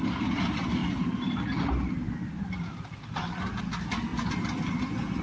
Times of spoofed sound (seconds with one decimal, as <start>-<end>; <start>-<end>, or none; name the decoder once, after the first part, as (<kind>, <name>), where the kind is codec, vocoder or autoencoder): none